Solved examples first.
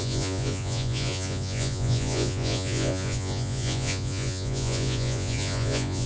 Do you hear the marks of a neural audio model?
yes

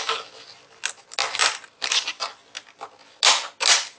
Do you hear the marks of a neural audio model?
no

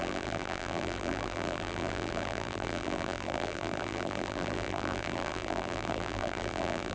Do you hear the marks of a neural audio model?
yes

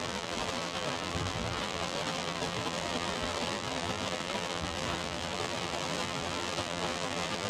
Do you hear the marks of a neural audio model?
yes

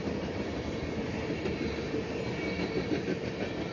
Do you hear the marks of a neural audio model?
no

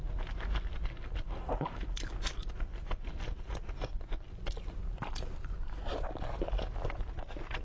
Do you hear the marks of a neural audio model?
no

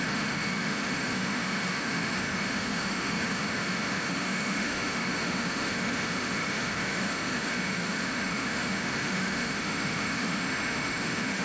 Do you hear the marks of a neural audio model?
yes